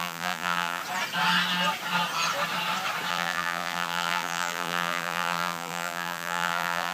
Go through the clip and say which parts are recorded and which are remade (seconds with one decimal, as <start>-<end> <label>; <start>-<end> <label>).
0.0-0.8 remade; 0.8-3.1 recorded; 3.1-6.9 remade